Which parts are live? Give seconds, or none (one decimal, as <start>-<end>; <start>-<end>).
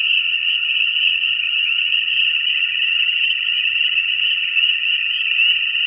5.0-5.9